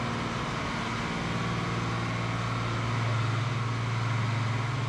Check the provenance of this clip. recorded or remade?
recorded